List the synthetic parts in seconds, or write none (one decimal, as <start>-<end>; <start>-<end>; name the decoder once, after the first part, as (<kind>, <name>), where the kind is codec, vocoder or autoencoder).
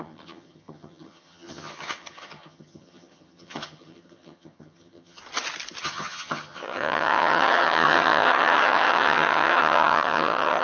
0.0-5.2 (vocoder, HiFi-GAN); 5.8-10.6